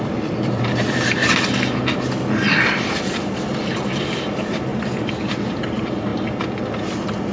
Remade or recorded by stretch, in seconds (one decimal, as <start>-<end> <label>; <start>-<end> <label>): 0.0-1.2 remade; 1.2-2.8 recorded; 2.8-4.7 remade; 4.7-5.3 recorded; 5.3-6.1 remade; 6.1-6.6 recorded; 6.6-7.3 remade